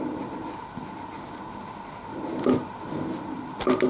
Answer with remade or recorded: recorded